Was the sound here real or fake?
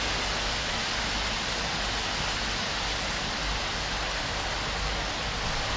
real